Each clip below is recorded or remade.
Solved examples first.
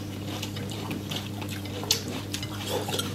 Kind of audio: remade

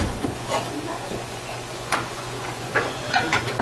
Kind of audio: remade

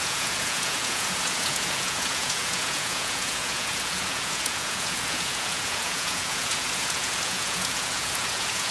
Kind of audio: remade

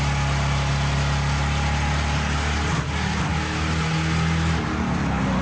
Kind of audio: recorded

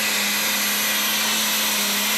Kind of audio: recorded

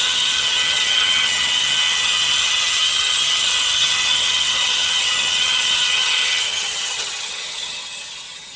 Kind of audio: remade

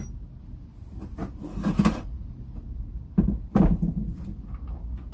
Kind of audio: recorded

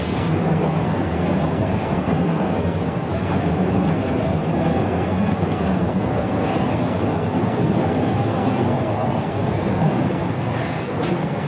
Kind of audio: remade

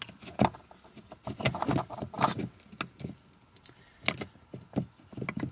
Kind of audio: recorded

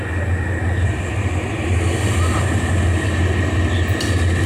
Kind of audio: recorded